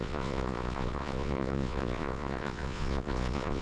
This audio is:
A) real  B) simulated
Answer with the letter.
B